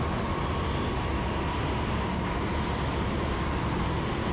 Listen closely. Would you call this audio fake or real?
real